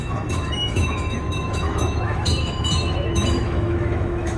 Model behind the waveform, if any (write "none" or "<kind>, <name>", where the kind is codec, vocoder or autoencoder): autoencoder, DAC-VAE